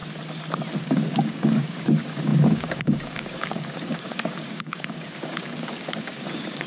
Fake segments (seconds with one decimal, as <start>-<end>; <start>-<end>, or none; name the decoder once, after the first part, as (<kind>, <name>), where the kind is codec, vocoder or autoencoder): 0.8-6.7 (codec, DAC)

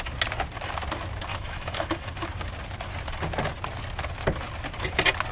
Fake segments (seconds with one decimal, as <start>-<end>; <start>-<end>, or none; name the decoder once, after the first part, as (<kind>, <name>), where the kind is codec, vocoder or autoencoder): 1.3-2.1 (autoencoder, DAC-VAE)

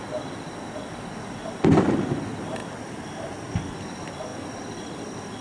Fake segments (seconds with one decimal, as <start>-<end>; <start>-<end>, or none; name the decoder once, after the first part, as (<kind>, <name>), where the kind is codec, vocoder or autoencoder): none

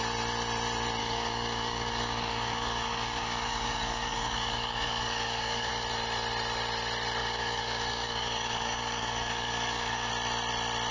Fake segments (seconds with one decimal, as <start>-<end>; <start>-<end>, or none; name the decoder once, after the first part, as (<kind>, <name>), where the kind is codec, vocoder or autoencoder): 1.0-5.7 (codec, DAC); 7.2-10.1